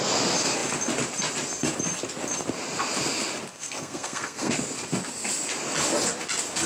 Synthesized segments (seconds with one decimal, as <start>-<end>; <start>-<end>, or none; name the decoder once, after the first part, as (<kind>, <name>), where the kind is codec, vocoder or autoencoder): 3.5-4.5 (codec, SNAC)